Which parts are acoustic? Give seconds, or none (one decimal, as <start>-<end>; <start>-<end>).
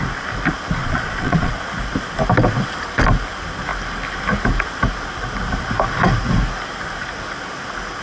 0.0-0.8; 1.5-8.0